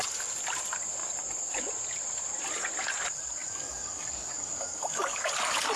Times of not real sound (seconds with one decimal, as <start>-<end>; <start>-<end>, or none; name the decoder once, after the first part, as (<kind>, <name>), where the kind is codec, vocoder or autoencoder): 3.4-5.3 (codec, DAC)